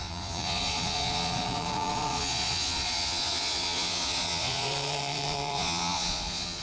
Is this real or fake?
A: fake